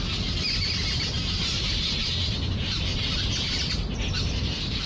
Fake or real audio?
real